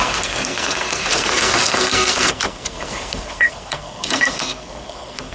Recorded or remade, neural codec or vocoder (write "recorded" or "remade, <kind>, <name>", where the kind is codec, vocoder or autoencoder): remade, codec, SNAC